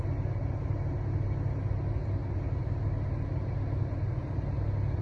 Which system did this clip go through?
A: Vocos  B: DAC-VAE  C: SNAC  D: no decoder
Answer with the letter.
D